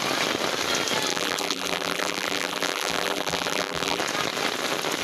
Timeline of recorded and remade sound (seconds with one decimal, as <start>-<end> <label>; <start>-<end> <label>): 0.0-1.1 recorded; 1.1-4.0 remade; 4.0-5.0 recorded